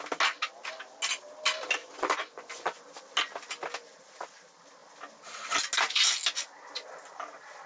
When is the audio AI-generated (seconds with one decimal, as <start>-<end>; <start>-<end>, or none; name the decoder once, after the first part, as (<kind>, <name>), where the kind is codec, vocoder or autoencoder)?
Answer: 1.8-2.8 (vocoder, Vocos)